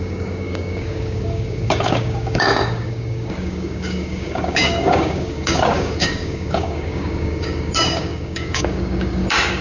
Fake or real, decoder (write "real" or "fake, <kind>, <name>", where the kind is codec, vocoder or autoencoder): fake, codec, DAC